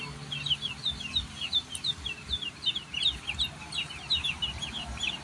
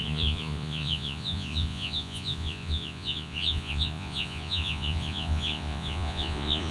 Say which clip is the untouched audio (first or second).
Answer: first